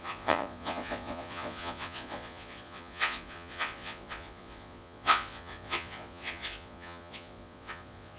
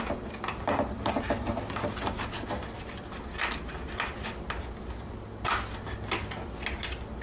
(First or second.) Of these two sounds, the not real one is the first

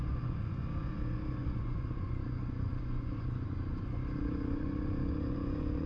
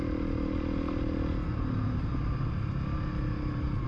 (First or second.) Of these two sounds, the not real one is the first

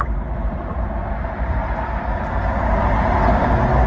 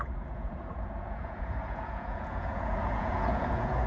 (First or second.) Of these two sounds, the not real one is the second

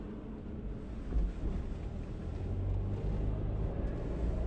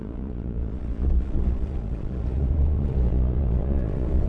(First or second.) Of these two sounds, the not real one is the second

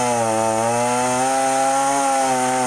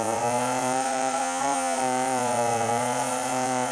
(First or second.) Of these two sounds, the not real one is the second